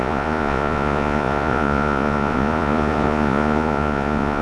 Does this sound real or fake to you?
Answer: fake